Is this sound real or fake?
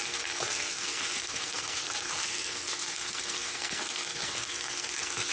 fake